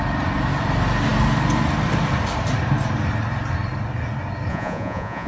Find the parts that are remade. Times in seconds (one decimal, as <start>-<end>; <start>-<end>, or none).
4.5-5.3